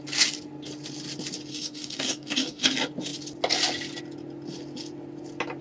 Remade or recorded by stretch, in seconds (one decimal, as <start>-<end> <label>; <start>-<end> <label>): 0.0-1.5 recorded; 1.5-2.7 remade; 2.7-5.6 recorded